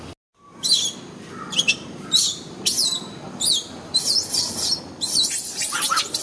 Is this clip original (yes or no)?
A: yes